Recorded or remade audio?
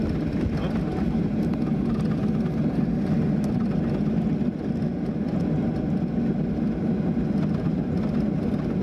recorded